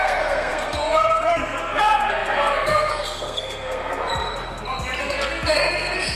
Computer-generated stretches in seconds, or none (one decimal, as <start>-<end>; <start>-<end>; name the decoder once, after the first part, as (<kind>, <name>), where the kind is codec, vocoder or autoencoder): 0.0-4.1 (codec, SNAC); 5.0-6.2